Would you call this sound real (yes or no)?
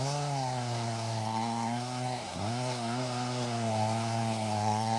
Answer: no